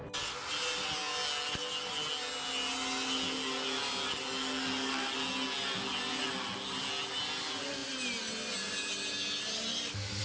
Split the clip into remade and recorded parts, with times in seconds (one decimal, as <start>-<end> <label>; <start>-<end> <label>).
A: 0.0-10.2 recorded

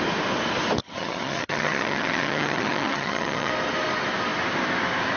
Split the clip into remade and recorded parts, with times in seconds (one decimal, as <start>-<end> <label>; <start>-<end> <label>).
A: 0.0-0.8 recorded; 0.8-3.5 remade; 3.5-5.2 recorded

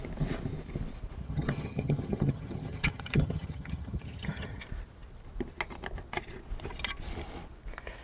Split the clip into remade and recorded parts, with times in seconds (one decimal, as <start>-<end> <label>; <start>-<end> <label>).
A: 0.0-1.2 recorded; 1.2-4.6 remade; 4.6-8.0 recorded